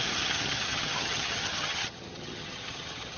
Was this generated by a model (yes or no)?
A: yes